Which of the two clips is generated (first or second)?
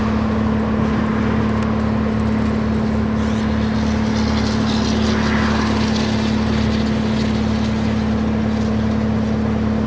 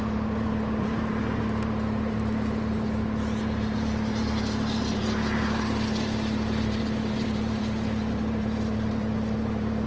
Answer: second